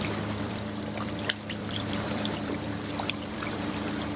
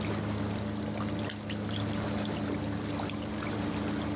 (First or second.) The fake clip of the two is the first